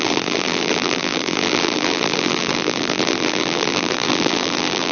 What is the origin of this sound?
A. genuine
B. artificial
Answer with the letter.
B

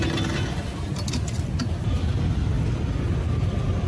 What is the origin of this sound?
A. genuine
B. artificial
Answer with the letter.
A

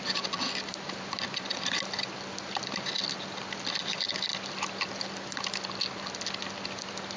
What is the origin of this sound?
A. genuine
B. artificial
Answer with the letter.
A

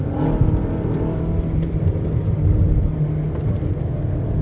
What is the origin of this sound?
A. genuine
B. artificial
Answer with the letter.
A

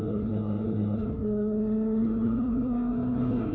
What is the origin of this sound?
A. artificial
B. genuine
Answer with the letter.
A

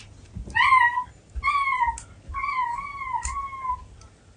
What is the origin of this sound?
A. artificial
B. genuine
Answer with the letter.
B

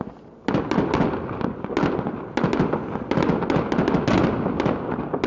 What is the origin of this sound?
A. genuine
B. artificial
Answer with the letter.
A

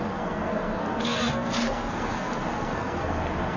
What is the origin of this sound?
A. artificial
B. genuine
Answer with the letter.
A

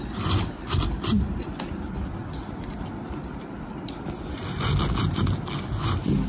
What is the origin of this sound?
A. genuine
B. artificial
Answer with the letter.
A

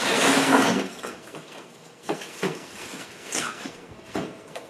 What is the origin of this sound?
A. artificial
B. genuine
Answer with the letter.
A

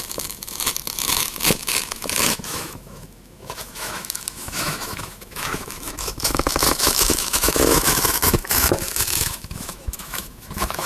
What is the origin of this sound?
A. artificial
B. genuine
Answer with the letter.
A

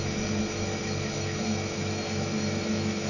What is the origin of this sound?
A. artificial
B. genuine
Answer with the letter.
A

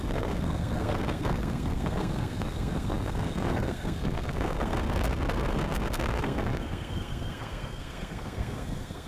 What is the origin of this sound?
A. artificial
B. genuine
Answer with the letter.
A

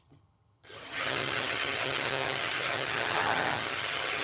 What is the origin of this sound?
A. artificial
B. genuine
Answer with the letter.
A